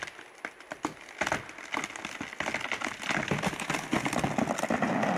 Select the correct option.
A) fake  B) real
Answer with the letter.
B